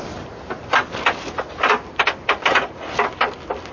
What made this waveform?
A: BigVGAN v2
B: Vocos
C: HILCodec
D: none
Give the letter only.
D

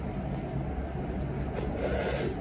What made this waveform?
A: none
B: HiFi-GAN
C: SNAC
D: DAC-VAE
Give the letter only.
A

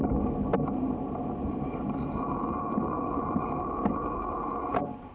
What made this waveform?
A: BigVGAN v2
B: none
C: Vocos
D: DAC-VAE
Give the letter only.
B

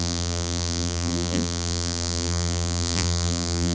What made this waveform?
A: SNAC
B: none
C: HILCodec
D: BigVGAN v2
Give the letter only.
D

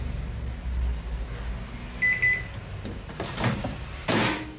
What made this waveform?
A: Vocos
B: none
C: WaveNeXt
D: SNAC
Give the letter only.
B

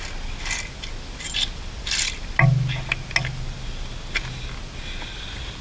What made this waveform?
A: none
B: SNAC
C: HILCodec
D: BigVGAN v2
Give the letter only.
A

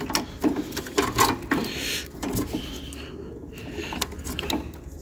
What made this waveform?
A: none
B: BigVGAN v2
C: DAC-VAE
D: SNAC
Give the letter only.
A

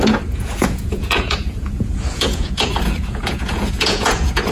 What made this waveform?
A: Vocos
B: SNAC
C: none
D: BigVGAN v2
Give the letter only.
A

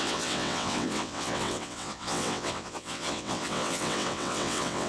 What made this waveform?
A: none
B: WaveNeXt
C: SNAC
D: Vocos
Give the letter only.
B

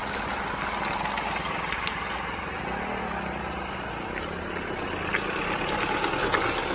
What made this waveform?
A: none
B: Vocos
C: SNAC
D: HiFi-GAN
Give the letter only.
A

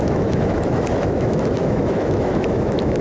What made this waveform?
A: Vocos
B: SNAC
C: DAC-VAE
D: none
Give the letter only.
C